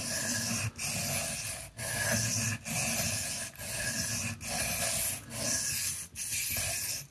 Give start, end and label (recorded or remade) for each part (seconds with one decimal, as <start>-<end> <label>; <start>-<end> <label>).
0.0-7.1 recorded

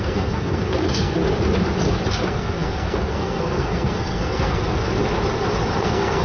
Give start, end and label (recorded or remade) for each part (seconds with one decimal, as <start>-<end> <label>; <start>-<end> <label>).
0.0-1.2 remade; 1.2-2.1 recorded; 2.1-5.0 remade; 5.0-5.8 recorded; 5.8-6.2 remade

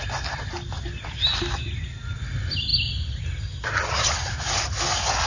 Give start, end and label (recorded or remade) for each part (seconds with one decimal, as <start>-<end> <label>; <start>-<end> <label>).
0.0-5.3 recorded

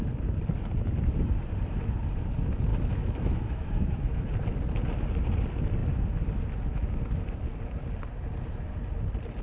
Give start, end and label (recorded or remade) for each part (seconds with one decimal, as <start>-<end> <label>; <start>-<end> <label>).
0.0-2.7 recorded; 2.7-4.0 remade; 4.0-9.4 recorded

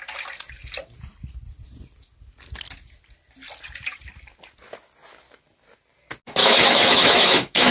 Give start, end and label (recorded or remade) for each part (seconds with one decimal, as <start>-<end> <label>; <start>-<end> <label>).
0.0-6.4 recorded; 6.4-7.7 remade

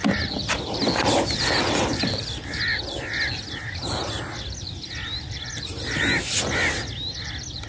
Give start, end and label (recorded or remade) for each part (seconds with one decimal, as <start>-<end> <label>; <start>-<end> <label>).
0.0-7.7 recorded